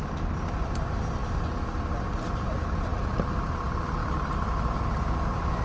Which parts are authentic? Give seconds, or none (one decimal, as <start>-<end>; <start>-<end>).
0.0-5.6